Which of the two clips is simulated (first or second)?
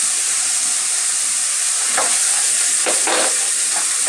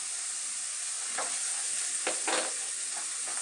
first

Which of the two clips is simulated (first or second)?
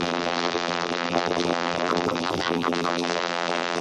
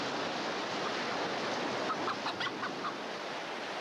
first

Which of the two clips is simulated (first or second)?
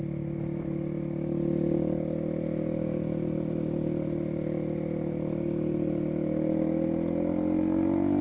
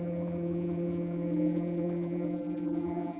second